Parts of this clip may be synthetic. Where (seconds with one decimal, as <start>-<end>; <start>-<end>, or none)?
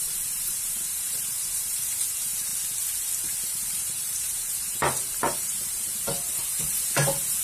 0.0-2.5; 3.2-7.4